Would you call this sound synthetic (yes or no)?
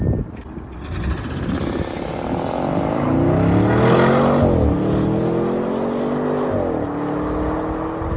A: no